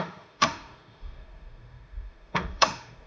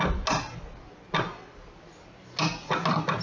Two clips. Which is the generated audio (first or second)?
first